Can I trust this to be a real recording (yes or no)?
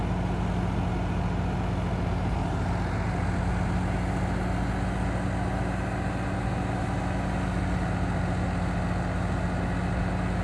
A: yes